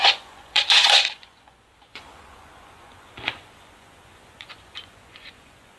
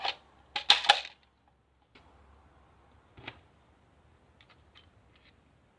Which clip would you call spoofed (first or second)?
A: first